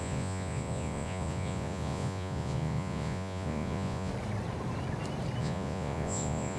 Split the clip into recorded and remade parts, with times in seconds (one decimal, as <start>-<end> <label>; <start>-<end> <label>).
0.0-4.1 remade; 4.1-5.4 recorded; 5.4-6.6 remade